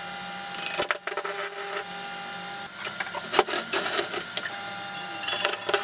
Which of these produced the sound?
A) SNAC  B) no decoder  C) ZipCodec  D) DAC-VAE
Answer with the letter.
B